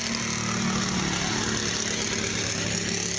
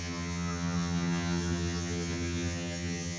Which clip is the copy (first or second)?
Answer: second